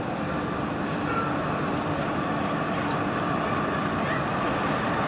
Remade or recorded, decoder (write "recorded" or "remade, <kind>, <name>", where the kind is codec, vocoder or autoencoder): recorded